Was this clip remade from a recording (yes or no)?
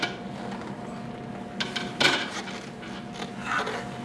no